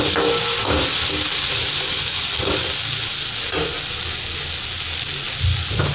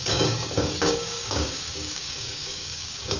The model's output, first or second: second